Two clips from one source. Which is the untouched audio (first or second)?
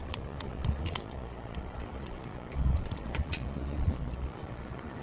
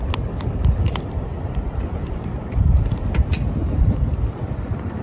second